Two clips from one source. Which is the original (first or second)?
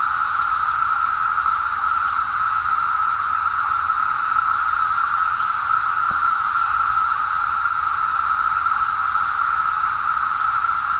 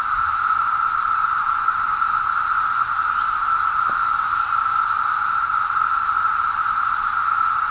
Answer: second